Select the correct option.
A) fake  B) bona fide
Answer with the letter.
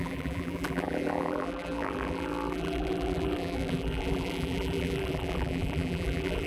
A